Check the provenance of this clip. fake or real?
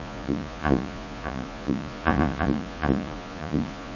fake